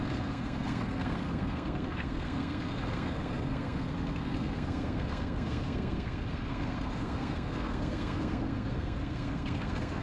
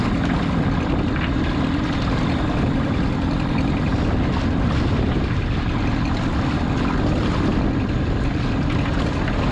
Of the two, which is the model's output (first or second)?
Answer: first